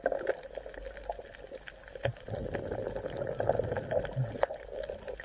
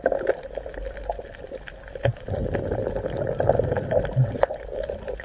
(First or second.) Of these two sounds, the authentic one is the first